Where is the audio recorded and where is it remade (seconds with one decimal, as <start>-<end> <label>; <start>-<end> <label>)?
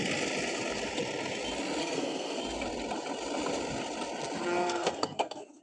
0.0-1.8 recorded; 1.8-2.4 remade; 2.4-4.6 recorded; 4.6-5.6 remade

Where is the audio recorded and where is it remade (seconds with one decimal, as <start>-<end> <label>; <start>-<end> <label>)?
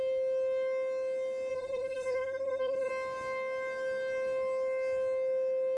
0.0-1.5 recorded; 1.5-2.9 remade; 2.9-5.8 recorded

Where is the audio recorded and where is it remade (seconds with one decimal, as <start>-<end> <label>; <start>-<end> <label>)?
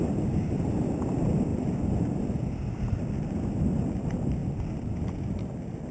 0.0-4.4 remade; 4.4-5.9 recorded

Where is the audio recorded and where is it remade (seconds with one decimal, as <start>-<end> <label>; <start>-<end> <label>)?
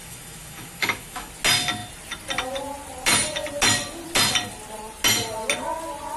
0.0-1.3 remade; 1.3-6.2 recorded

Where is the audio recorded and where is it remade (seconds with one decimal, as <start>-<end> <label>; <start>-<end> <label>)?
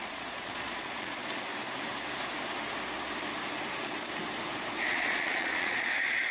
0.0-1.2 remade; 1.2-4.9 recorded; 4.9-6.3 remade